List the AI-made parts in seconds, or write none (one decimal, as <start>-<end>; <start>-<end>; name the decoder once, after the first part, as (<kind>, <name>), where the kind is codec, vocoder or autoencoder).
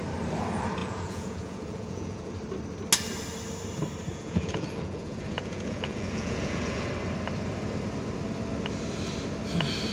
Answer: 0.8-2.3 (vocoder, Vocos); 4.1-6.9